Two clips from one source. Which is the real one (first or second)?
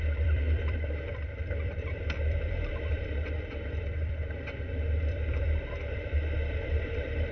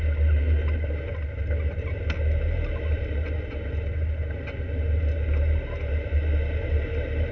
second